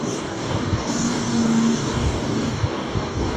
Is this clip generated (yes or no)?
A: yes